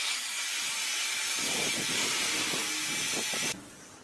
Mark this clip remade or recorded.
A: recorded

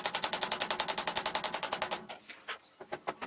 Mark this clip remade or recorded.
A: recorded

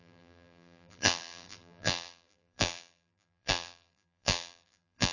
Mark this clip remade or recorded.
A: remade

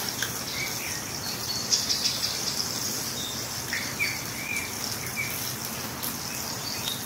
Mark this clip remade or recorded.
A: recorded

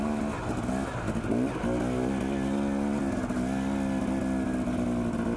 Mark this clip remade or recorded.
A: recorded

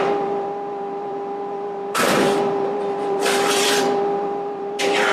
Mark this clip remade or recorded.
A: remade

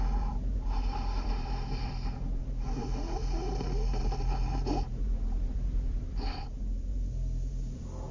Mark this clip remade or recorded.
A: remade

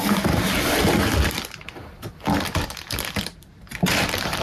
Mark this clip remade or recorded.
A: remade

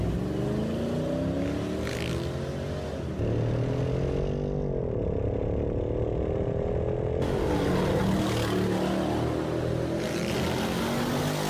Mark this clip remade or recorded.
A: recorded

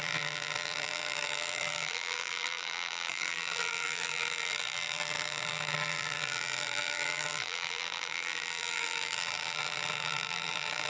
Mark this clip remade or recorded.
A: remade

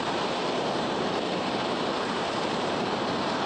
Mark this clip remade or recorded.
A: remade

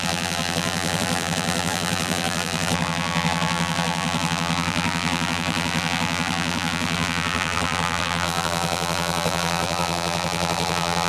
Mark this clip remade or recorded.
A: remade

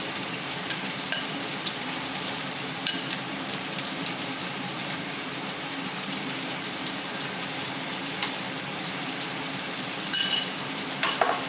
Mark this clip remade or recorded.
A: remade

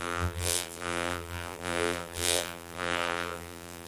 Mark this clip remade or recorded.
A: remade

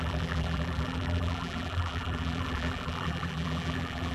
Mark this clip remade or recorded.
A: remade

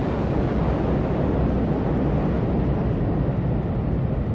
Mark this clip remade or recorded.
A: recorded